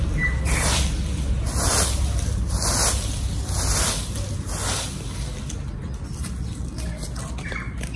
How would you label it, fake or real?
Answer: real